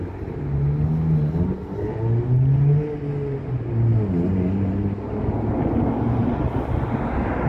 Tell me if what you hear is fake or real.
real